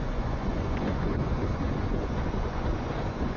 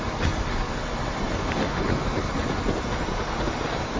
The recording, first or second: second